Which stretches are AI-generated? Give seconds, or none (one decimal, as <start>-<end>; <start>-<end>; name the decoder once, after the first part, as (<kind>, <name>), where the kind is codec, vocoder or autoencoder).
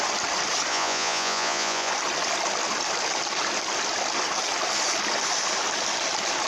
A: 0.7-1.9 (vocoder, Vocos)